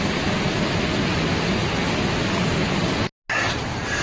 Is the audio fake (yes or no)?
no